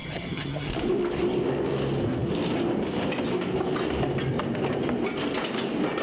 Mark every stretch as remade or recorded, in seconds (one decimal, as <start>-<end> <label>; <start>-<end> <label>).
0.0-0.7 remade; 0.7-6.0 recorded